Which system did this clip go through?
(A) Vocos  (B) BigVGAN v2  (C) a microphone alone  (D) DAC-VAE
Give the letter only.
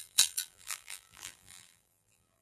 B